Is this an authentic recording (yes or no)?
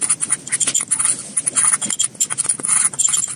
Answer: yes